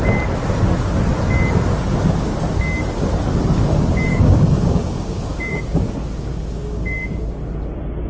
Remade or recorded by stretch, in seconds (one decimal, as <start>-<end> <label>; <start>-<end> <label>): 0.0-4.1 recorded; 4.1-5.8 remade; 5.8-6.3 recorded; 6.3-7.3 remade; 7.3-8.1 recorded